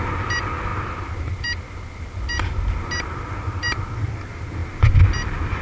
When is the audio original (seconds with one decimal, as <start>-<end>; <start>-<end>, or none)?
0.0-5.6